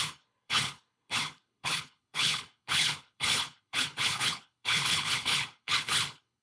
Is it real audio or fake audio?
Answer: fake